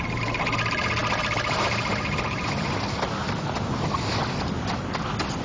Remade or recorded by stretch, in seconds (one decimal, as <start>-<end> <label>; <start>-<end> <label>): 0.0-5.4 recorded

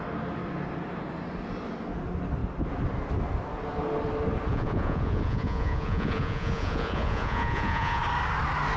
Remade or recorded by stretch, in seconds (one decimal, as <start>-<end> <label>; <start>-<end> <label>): 0.0-4.5 recorded; 4.5-8.0 remade; 8.0-8.8 recorded

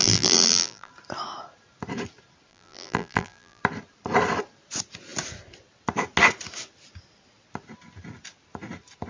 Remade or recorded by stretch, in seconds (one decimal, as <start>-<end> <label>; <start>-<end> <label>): 0.0-0.9 remade; 0.9-2.5 recorded; 2.5-3.6 remade; 3.6-9.1 recorded

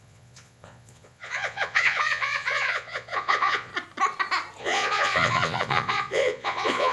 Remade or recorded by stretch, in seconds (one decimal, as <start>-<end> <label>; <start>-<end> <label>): 0.0-3.7 remade; 3.7-4.6 recorded; 4.6-6.9 remade